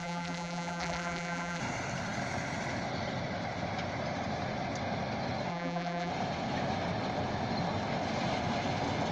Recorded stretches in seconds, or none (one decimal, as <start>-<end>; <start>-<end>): 1.6-5.5; 6.1-9.1